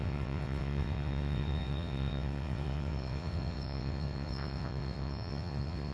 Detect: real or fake fake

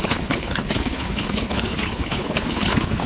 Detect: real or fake fake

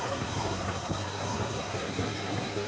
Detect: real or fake fake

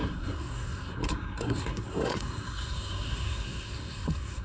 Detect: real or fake fake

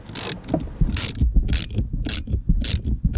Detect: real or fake real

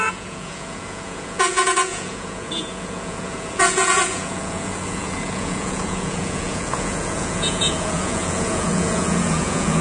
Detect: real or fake fake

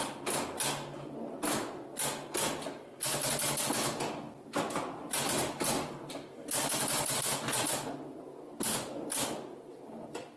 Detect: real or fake real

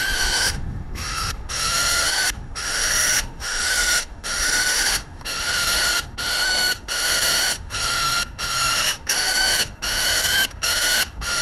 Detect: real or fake fake